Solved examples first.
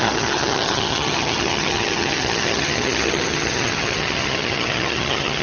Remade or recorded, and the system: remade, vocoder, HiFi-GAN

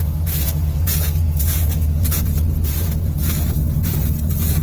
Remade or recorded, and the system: remade, vocoder, Vocos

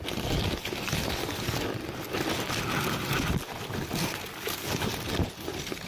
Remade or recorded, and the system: recorded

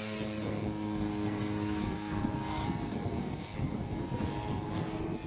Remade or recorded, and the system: remade, codec, SNAC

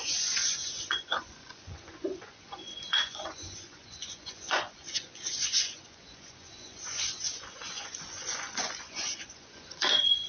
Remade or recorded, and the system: remade, vocoder, Vocos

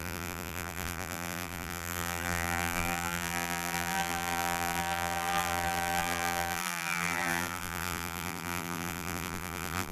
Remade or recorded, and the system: remade, vocoder, BigVGAN v2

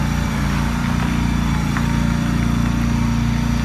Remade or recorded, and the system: recorded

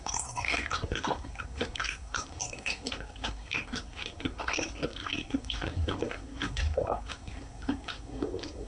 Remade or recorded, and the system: remade, codec, SNAC